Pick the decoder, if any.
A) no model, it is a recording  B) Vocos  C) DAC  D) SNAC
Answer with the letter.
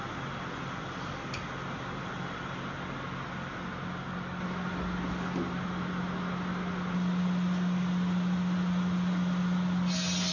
A